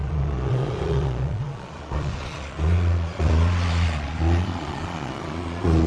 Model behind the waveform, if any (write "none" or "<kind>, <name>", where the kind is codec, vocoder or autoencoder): vocoder, Vocos